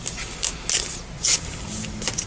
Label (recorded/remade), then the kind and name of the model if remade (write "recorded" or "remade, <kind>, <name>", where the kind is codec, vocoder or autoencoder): recorded